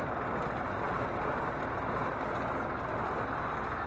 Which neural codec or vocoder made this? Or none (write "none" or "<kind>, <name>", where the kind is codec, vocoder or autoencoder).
none